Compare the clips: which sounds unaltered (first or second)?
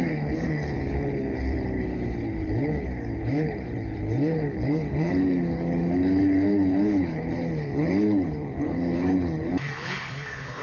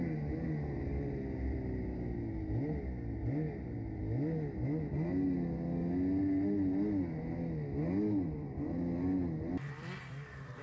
second